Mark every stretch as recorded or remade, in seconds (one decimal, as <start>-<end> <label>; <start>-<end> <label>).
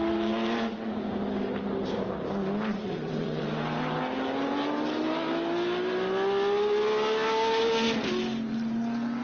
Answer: 0.0-2.8 recorded; 2.8-3.4 remade; 3.4-9.2 recorded